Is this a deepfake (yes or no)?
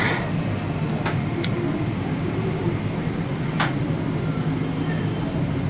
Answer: no